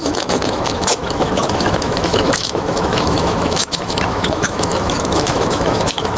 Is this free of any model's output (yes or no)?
no